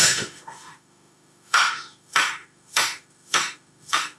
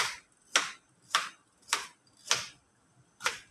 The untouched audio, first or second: second